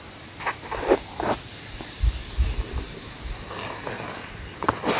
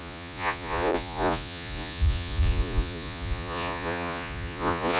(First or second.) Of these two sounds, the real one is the first